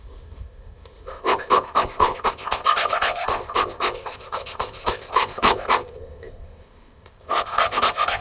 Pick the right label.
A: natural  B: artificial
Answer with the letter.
B